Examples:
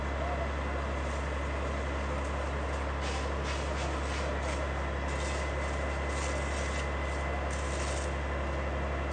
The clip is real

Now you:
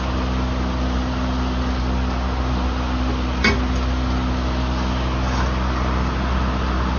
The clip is real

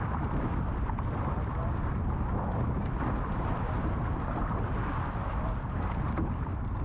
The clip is real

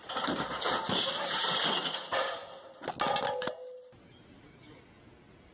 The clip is real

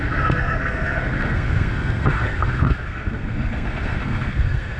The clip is fake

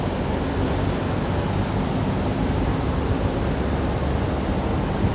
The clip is real